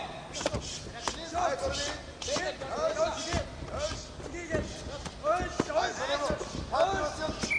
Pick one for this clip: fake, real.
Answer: real